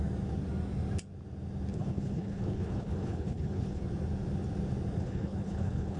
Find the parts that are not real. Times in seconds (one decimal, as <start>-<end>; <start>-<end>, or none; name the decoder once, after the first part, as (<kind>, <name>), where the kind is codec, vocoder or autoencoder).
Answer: 1.7-3.8 (codec, HILCodec); 5.0-6.0